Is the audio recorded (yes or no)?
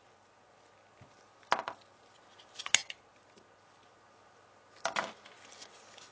yes